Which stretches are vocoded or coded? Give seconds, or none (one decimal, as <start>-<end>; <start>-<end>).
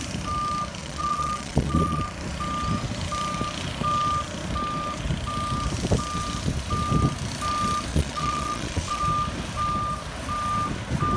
0.8-2.0; 7.9-9.0